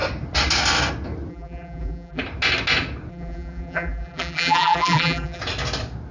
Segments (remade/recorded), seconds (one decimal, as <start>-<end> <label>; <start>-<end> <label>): 0.0-1.3 recorded; 1.3-2.2 remade; 2.2-3.1 recorded; 3.1-5.4 remade; 5.4-6.1 recorded